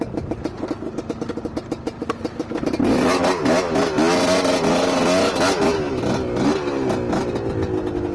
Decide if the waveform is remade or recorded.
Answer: recorded